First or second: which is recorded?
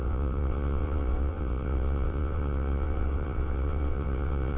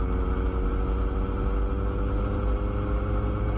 second